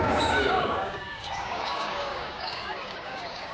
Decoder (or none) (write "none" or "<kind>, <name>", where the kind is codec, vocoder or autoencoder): codec, DAC